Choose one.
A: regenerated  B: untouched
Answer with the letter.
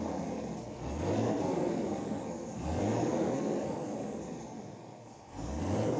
A